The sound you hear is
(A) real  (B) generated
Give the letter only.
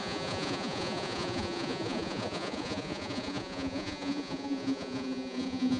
B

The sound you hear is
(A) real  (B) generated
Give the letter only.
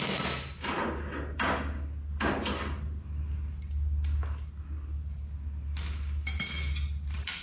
A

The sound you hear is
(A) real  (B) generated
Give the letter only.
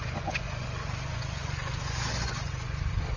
B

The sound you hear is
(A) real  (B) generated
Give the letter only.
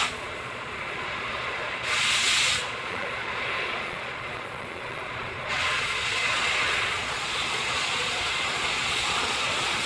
B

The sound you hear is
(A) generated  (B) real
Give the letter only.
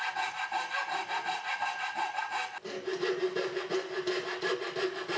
B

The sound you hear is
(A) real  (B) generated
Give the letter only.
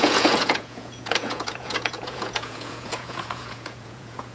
B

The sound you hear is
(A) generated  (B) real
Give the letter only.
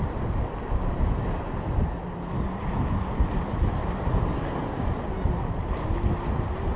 B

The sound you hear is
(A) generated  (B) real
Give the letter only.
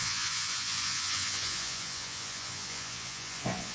A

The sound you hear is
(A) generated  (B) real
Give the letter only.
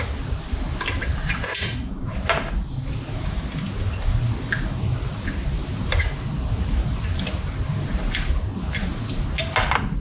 B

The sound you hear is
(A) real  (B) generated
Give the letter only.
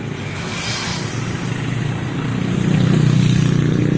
A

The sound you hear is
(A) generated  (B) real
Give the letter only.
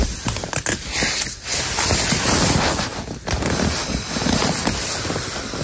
B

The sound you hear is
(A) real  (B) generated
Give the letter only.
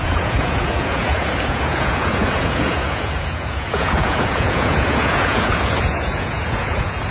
B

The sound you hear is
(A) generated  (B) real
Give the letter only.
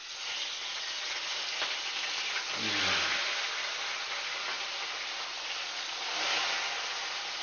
B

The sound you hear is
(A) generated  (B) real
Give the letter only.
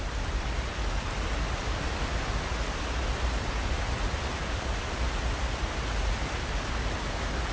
B